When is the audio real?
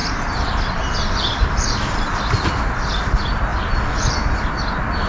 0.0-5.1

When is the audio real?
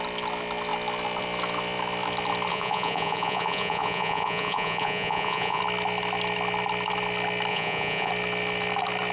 0.0-2.5; 5.6-7.5; 8.1-9.1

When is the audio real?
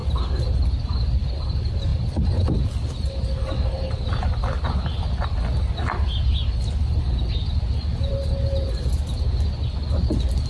0.0-10.5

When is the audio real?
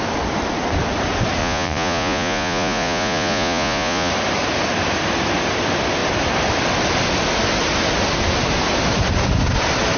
0.0-1.4; 4.1-10.0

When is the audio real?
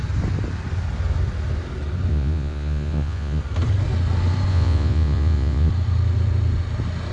0.0-2.1; 3.4-4.5; 5.7-7.1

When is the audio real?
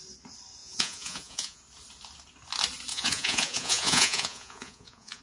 0.0-0.6; 1.6-2.9